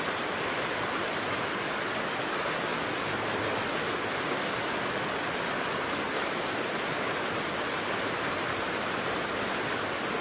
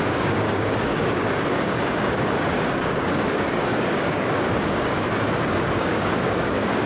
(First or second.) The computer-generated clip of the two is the second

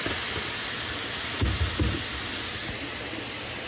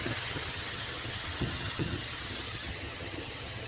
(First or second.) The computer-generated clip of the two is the second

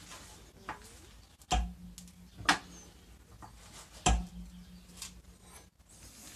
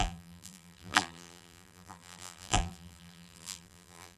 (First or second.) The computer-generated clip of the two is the second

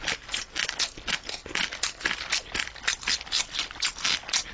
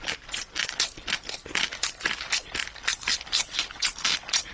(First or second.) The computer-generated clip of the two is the second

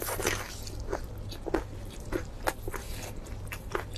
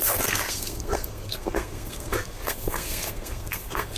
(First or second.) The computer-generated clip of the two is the second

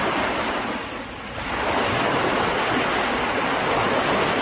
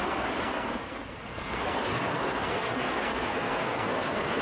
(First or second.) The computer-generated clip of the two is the second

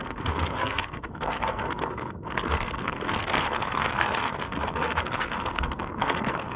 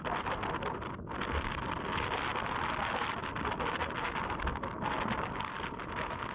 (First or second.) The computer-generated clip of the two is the first